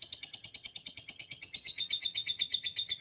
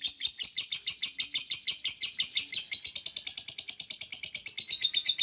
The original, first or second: second